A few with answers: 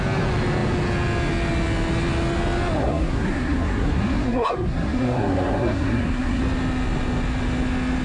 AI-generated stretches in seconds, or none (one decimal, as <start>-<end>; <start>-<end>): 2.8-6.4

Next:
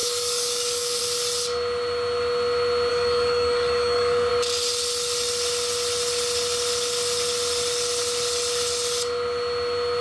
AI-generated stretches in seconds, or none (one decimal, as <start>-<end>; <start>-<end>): 0.0-1.0; 2.9-4.3

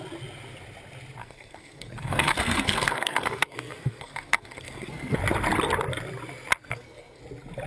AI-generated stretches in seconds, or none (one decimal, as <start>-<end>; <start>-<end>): 1.2-5.2; 6.6-7.2

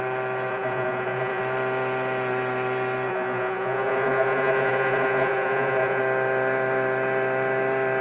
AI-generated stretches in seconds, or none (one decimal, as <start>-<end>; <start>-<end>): 0.5-1.4; 3.1-6.0

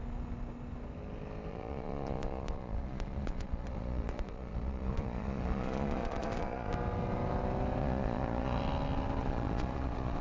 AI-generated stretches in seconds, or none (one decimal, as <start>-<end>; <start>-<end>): 1.5-6.7; 7.8-8.6; 9.2-10.2

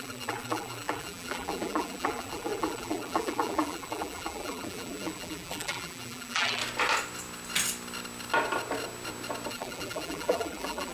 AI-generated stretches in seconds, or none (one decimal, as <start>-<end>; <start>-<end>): 0.0-6.6; 9.5-10.9

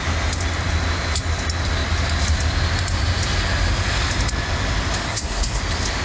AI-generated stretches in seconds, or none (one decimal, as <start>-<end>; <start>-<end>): 5.0-5.6